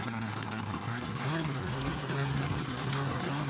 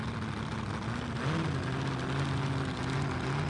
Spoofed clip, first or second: first